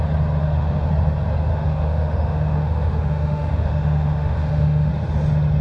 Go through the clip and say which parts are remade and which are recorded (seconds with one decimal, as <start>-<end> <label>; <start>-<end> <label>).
0.0-0.4 recorded; 0.4-0.9 remade; 0.9-1.5 recorded; 1.5-4.9 remade; 4.9-5.6 recorded